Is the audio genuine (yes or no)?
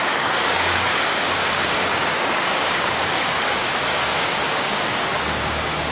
no